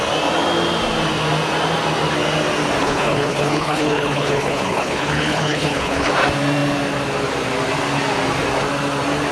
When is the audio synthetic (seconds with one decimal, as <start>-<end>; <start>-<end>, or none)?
2.8-6.1